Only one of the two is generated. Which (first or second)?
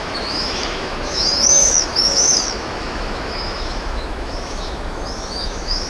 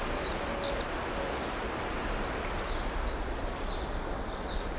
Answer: first